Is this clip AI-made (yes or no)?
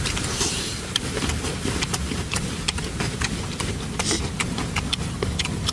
yes